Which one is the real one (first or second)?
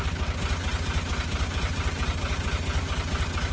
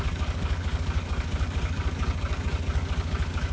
first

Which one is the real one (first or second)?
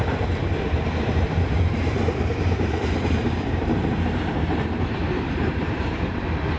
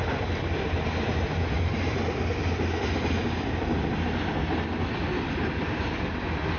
second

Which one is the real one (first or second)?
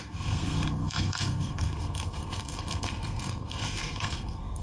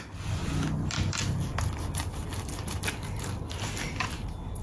second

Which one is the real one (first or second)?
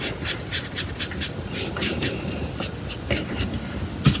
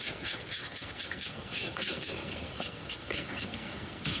first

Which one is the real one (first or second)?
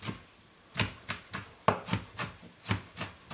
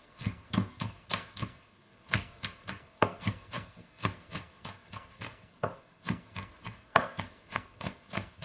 first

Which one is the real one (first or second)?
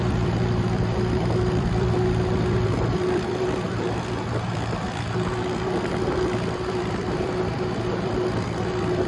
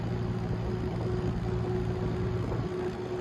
second